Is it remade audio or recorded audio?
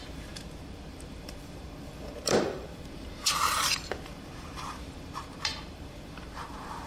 remade